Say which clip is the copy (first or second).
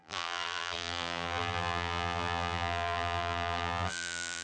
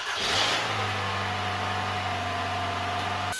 first